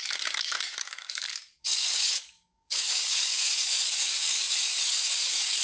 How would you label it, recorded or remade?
remade